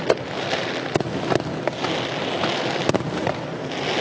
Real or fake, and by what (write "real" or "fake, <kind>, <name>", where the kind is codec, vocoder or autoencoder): real